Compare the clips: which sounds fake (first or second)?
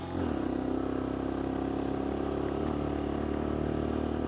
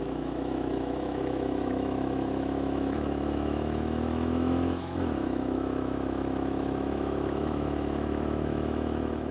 second